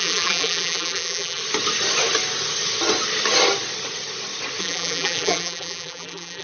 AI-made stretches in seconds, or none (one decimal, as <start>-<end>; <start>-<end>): 0.0-1.4; 4.6-6.4